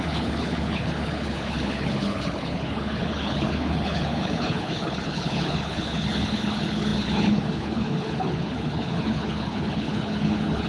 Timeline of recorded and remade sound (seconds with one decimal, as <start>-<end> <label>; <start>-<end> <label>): 0.0-10.7 remade